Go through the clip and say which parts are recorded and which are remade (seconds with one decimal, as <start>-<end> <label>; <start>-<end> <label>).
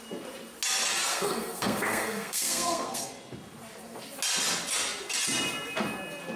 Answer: 0.0-1.1 recorded; 1.1-3.1 remade; 3.1-6.4 recorded